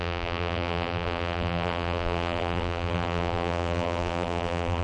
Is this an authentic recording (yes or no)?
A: no